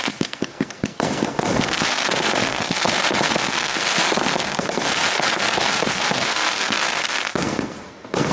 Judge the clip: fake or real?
fake